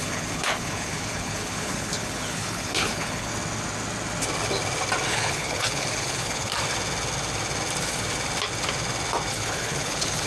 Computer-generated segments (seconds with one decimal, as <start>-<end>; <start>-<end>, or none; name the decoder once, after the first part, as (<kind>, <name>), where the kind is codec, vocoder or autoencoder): 0.0-3.3 (codec, HILCodec); 5.1-6.5; 9.3-10.3

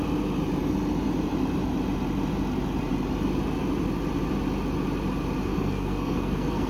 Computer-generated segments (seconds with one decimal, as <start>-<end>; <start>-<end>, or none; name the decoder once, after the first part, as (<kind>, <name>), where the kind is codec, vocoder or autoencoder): 5.5-6.7 (codec, SNAC)